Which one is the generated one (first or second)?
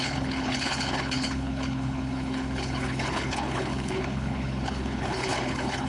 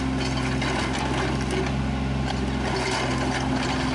first